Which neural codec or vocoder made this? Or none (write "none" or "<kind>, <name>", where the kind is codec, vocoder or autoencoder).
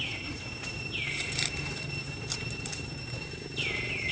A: vocoder, BigVGAN v2